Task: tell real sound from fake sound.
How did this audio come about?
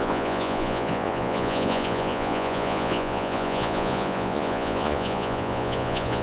fake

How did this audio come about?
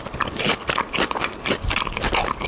real